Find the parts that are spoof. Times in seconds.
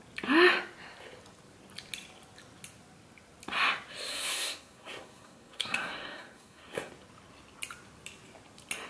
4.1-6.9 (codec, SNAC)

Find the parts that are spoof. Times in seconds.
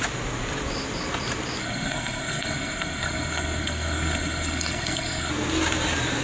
1.6-5.3 (codec, SNAC)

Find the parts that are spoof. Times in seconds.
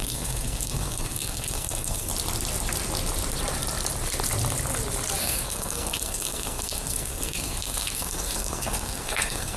0.0-2.1 (codec, SNAC); 5.2-9.6